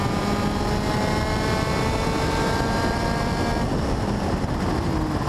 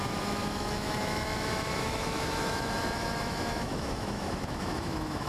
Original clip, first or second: first